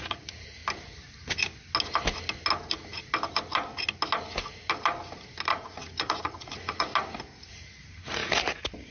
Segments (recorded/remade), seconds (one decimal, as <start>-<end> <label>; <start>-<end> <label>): 0.0-0.6 remade; 0.6-5.5 recorded; 5.5-6.9 remade; 6.9-7.5 recorded; 7.5-8.9 remade